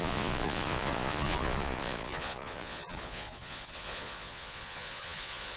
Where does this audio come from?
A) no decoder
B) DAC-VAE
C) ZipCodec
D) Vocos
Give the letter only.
D